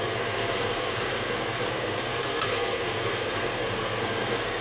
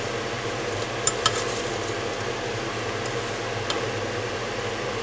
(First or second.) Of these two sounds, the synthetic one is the first